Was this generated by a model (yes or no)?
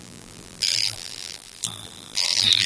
yes